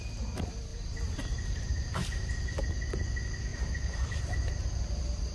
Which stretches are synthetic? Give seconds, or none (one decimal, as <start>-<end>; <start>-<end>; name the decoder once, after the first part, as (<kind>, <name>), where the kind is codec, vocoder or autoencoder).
0.7-2.6 (vocoder, BigVGAN v2); 3.5-4.6